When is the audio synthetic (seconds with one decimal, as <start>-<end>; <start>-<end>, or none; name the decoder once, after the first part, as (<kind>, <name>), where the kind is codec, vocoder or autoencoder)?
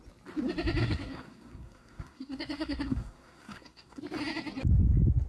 0.8-4.0 (codec, SNAC)